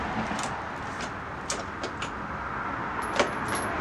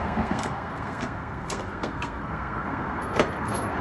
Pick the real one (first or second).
first